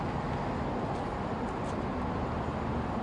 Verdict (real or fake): real